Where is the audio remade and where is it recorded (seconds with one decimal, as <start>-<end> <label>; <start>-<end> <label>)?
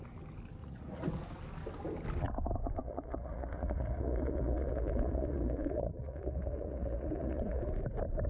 0.0-0.6 recorded; 0.6-1.1 remade; 1.1-2.8 recorded; 2.8-7.6 remade; 7.6-8.3 recorded